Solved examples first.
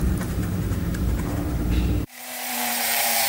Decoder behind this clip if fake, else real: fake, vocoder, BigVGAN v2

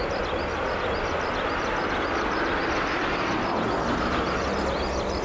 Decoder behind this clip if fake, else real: real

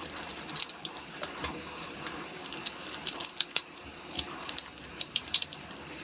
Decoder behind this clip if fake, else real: fake, vocoder, BigVGAN v2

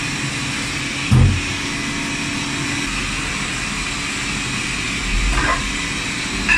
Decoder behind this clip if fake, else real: real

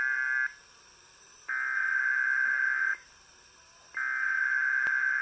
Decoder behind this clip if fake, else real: fake, vocoder, BigVGAN v2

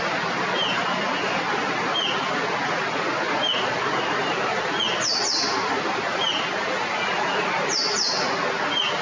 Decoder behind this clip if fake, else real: real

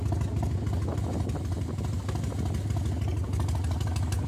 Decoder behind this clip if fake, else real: real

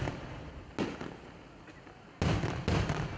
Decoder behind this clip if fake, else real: real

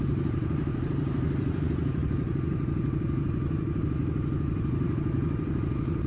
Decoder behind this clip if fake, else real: fake, vocoder, BigVGAN v2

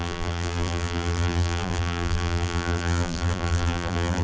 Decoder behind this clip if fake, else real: fake, vocoder, BigVGAN v2